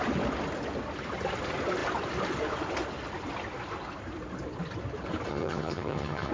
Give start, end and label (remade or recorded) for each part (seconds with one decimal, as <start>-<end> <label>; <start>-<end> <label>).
0.0-5.3 recorded; 5.3-6.3 remade